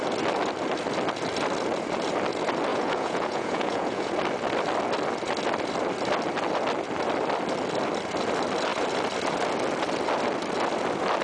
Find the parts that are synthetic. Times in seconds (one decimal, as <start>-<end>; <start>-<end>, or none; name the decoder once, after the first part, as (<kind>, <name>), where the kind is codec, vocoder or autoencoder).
2.7-4.1 (vocoder, Vocos)